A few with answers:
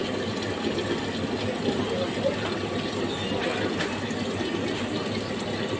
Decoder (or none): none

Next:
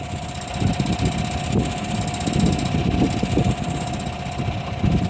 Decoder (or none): none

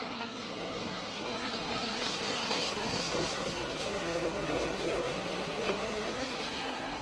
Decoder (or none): codec, SNAC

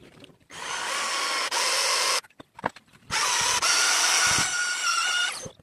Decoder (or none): none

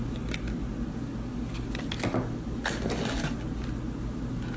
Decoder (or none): none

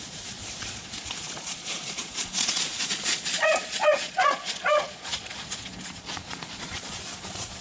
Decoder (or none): vocoder, Vocos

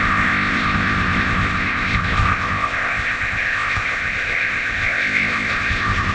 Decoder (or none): codec, ZipCodec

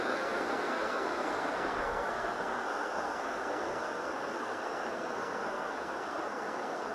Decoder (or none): codec, SNAC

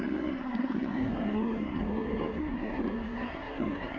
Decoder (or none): codec, SNAC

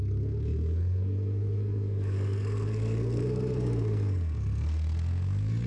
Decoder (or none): codec, SNAC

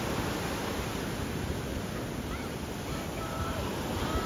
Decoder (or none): none